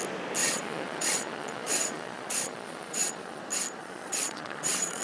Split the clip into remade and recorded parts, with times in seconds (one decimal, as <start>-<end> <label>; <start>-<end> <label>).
0.0-0.4 recorded; 0.4-3.4 remade; 3.4-3.8 recorded; 3.8-5.0 remade